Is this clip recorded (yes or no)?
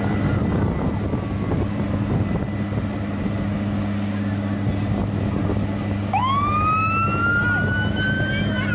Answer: yes